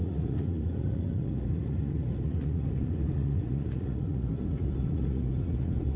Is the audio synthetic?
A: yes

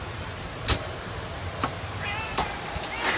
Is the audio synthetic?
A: no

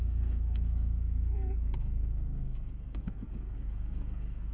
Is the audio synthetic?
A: yes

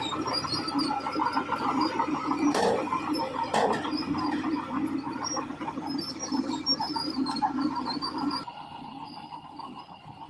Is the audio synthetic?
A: no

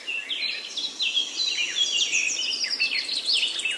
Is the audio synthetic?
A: no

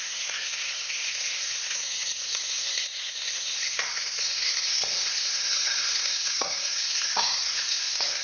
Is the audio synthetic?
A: yes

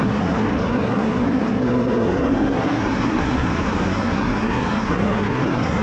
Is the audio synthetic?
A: yes